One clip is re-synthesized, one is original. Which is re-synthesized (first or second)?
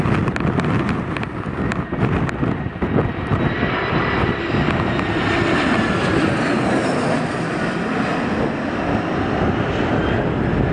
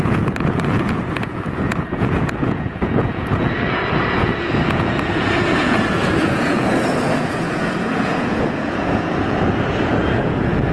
second